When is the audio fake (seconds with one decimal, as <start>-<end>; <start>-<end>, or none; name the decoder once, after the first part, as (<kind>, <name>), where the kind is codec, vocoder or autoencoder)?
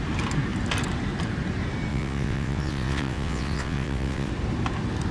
1.9-4.3 (vocoder, WaveNeXt)